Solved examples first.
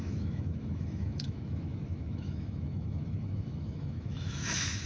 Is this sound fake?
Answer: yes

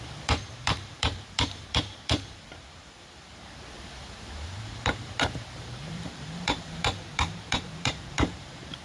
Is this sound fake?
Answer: yes